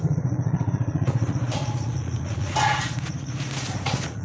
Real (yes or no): no